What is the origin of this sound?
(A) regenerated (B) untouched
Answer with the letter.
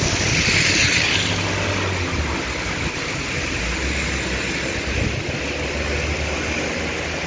B